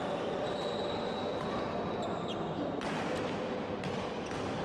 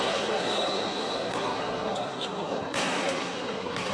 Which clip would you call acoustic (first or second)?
first